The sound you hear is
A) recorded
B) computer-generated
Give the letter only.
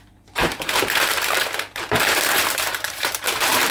B